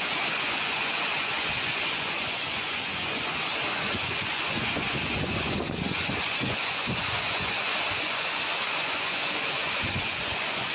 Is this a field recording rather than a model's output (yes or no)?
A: no